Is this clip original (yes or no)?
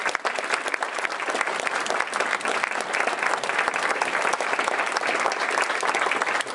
yes